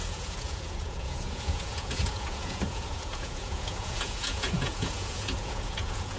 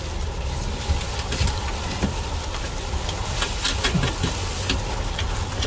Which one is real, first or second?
second